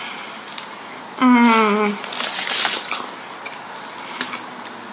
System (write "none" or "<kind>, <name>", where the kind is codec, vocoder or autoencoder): none